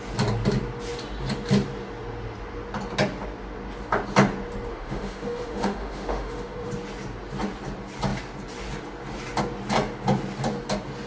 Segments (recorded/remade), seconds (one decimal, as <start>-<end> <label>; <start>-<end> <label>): 0.0-4.7 recorded; 4.7-6.7 remade; 6.7-11.1 recorded